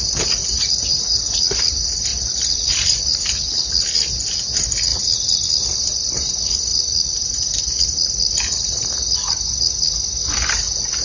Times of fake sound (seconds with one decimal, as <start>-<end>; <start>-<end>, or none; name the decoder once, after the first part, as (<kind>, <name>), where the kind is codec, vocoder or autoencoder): 0.4-1.2 (vocoder, BigVGAN v2)